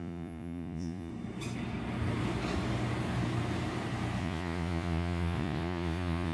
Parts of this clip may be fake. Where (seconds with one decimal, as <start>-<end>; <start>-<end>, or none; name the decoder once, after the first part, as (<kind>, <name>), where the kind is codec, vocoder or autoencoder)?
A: 0.0-1.1 (vocoder, Vocos); 4.2-6.3